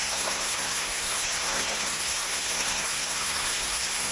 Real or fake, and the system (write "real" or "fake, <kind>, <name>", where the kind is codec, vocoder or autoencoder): fake, codec, SNAC